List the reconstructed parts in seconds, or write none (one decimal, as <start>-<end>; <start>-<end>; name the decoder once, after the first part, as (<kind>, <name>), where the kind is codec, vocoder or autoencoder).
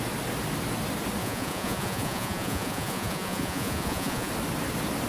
1.2-4.3 (vocoder, Vocos)